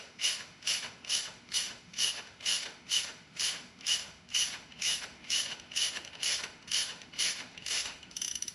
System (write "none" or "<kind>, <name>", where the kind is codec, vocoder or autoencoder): autoencoder, DAC-VAE